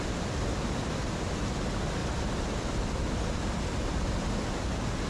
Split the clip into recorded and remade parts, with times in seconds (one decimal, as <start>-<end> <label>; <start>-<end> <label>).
0.0-0.5 recorded; 0.5-1.3 remade; 1.3-5.1 recorded